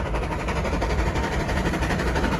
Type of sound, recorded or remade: recorded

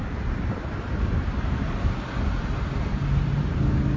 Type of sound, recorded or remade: recorded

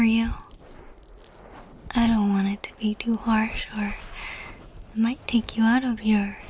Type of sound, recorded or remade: recorded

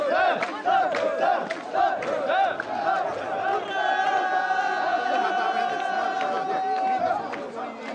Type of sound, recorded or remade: recorded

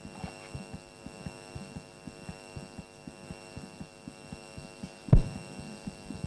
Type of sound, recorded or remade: recorded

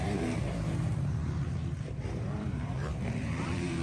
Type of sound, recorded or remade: remade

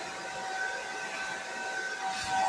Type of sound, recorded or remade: recorded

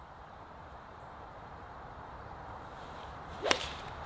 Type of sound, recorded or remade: remade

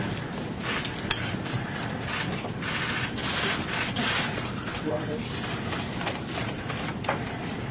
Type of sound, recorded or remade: remade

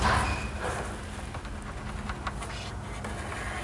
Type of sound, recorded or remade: recorded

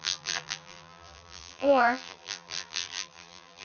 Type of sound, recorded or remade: remade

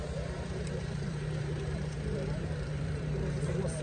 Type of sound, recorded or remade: remade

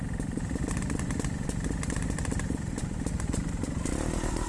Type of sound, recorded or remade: remade